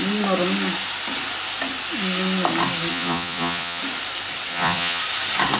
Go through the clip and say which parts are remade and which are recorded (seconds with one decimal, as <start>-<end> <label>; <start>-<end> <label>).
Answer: 0.0-2.9 recorded; 2.9-3.8 remade; 3.8-4.5 recorded; 4.5-5.0 remade; 5.0-5.6 recorded